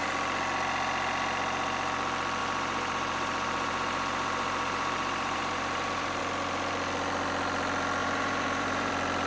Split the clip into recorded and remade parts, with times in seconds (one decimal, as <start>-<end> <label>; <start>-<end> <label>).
0.0-2.4 recorded; 2.4-6.2 remade; 6.2-8.0 recorded; 8.0-8.9 remade; 8.9-9.3 recorded